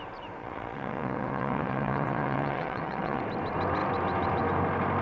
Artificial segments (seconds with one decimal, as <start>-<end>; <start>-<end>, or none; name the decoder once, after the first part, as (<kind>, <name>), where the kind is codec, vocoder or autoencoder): 0.4-3.2 (vocoder, WaveNeXt)